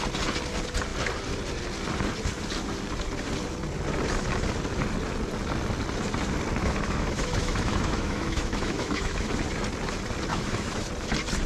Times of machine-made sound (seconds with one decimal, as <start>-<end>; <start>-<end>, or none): 6.6-9.3; 10.3-10.9